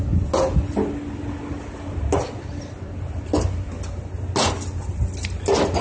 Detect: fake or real real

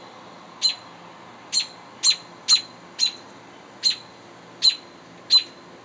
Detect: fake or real real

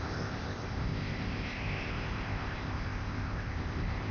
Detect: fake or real fake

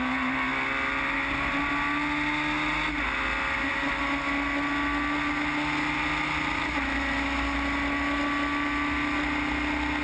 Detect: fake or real real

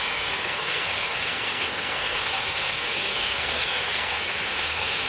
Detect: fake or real fake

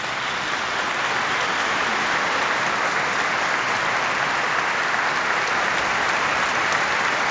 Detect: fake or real real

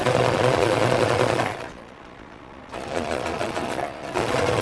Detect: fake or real fake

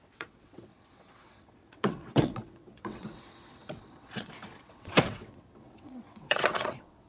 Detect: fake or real fake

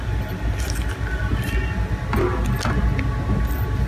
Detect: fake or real real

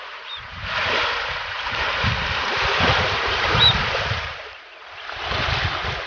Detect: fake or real fake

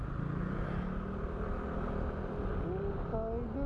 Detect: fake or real real